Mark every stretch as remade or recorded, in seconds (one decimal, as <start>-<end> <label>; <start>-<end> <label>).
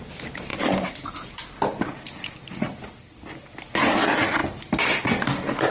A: 0.0-5.7 recorded